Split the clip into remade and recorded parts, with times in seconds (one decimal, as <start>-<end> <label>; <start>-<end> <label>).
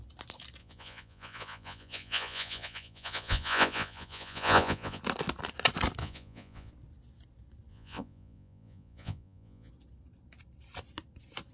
0.0-0.6 recorded; 0.6-5.0 remade; 5.0-6.0 recorded; 6.0-6.7 remade; 6.7-7.7 recorded; 7.7-9.7 remade; 9.7-11.5 recorded